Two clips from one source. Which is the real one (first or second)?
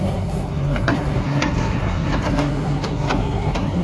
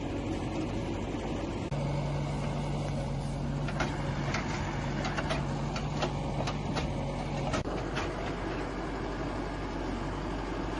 second